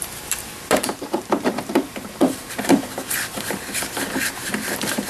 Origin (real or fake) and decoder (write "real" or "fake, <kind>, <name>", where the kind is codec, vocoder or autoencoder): fake, vocoder, BigVGAN v2